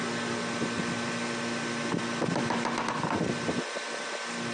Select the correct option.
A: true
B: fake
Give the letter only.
A